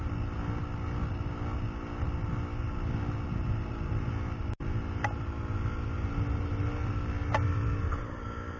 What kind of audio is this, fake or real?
real